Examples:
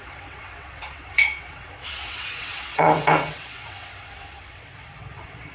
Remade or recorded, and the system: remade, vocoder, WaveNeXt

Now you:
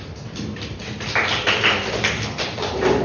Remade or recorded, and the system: recorded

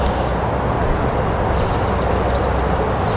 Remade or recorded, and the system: recorded